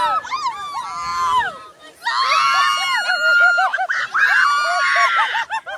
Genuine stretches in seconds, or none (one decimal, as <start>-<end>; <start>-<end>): 0.0-5.8